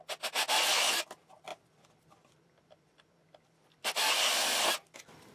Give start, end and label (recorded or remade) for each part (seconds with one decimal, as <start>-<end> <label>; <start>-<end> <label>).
0.0-1.5 recorded; 1.5-4.0 remade; 4.0-5.3 recorded